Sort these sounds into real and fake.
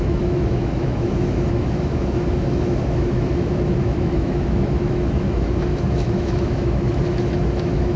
fake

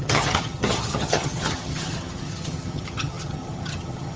fake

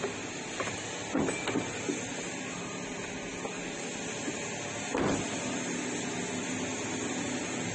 real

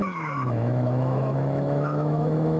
fake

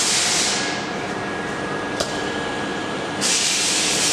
fake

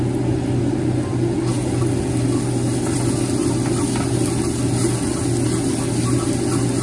real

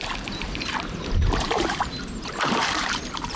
fake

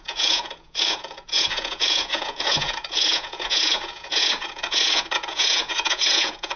fake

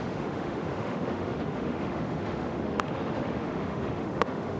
fake